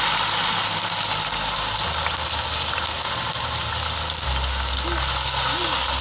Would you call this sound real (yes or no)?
yes